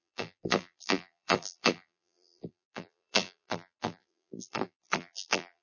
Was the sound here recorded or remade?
remade